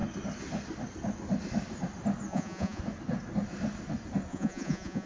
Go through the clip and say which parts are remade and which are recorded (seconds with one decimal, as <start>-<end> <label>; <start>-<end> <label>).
0.0-2.3 recorded; 2.3-2.8 remade; 2.8-4.3 recorded; 4.3-5.1 remade